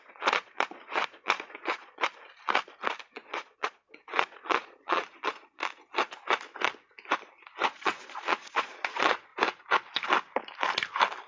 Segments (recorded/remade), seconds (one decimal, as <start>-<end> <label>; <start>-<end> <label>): 0.0-2.1 remade; 2.1-3.1 recorded; 3.1-5.6 remade; 5.6-7.7 recorded; 7.7-9.3 remade; 9.3-11.3 recorded